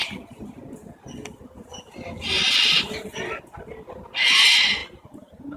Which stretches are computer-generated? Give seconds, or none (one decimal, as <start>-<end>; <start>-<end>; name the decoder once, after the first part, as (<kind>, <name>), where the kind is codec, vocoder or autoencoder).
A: none